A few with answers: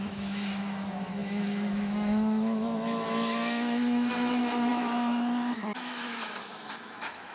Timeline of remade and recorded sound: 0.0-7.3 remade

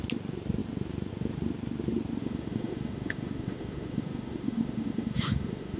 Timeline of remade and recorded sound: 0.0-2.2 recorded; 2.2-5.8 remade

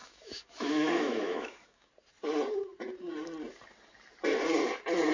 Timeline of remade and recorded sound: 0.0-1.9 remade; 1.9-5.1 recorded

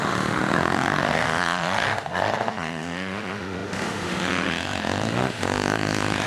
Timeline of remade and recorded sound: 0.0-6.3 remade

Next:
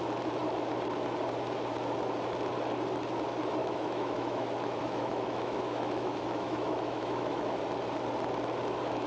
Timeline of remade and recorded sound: 0.0-3.6 recorded; 3.6-7.6 remade; 7.6-9.1 recorded

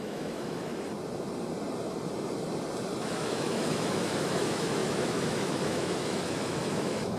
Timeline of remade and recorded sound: 0.0-0.7 remade; 0.7-3.0 recorded; 3.0-7.2 remade

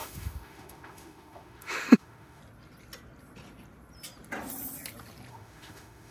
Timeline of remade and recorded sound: 0.0-2.4 remade; 2.4-5.3 recorded; 5.3-6.1 remade

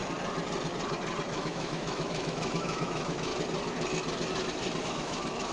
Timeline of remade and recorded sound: 0.0-1.3 recorded; 1.3-3.3 remade; 3.3-4.8 recorded; 4.8-5.5 remade